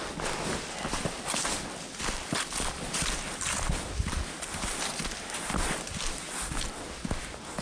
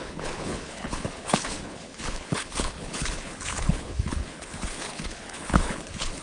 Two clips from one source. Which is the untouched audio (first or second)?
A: first